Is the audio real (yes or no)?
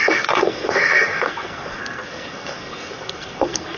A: no